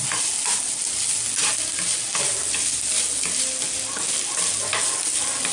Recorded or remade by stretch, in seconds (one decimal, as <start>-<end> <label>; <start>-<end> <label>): 0.0-5.5 recorded

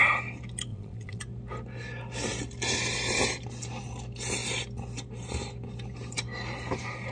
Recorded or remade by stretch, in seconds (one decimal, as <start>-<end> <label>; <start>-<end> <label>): 0.0-0.7 recorded; 0.7-1.2 remade; 1.2-7.1 recorded